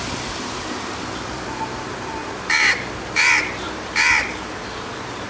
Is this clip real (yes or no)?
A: no